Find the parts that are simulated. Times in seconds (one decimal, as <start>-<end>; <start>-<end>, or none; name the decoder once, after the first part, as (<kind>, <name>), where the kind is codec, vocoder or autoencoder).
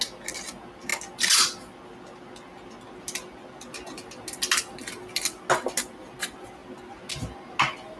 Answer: none